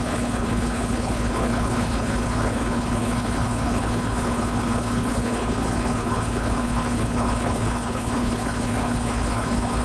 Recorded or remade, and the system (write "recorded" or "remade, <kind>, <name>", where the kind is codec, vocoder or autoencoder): remade, codec, HILCodec